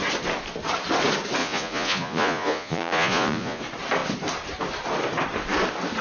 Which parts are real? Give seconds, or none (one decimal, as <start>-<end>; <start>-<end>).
0.0-1.4; 3.6-6.0